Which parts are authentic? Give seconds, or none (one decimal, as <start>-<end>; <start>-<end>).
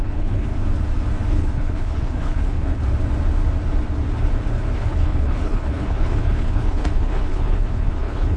0.5-1.3; 2.8-4.8